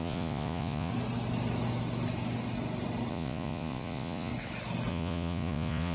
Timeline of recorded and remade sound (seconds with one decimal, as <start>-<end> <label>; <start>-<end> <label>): 0.0-0.9 remade; 0.9-3.1 recorded; 3.1-4.3 remade; 4.3-4.9 recorded; 4.9-5.9 remade